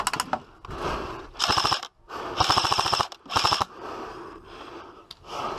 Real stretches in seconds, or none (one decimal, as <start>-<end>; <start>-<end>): 0.0-4.1; 4.7-5.6